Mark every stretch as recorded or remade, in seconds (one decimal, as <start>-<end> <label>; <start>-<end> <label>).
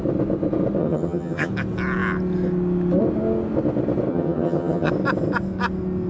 0.0-0.8 recorded; 0.8-1.5 remade; 1.5-4.1 recorded; 4.1-4.9 remade; 4.9-6.1 recorded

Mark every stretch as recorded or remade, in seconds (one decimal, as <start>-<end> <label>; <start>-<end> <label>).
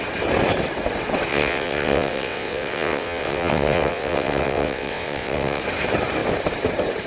0.0-1.3 recorded; 1.3-5.6 remade; 5.6-7.1 recorded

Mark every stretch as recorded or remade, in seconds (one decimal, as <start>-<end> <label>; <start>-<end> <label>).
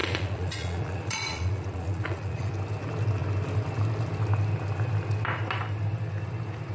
0.0-2.5 remade; 2.5-6.7 recorded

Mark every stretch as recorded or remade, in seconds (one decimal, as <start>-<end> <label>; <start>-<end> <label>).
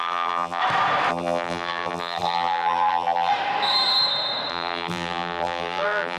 0.0-0.6 remade; 0.6-1.1 recorded; 1.1-3.3 remade; 3.3-4.5 recorded; 4.5-6.2 remade